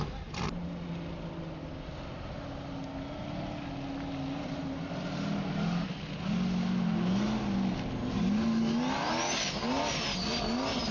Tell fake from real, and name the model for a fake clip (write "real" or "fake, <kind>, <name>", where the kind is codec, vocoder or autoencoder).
real